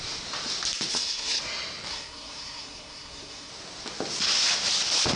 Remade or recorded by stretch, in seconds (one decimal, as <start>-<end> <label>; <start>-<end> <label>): 0.0-0.9 recorded; 0.9-1.4 remade; 1.4-1.9 recorded; 1.9-3.5 remade; 3.5-5.2 recorded